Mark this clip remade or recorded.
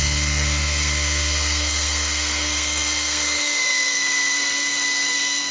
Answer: remade